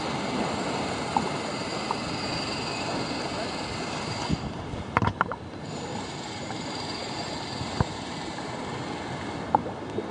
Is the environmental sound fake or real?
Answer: real